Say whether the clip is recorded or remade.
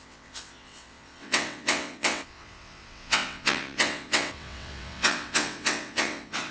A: remade